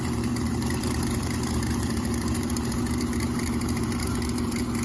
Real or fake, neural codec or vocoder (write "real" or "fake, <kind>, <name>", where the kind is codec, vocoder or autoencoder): fake, vocoder, BigVGAN v2